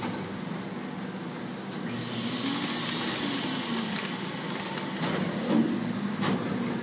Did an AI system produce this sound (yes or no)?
no